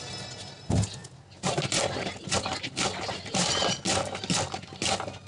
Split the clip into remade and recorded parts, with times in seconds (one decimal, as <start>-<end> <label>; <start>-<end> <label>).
0.0-5.3 recorded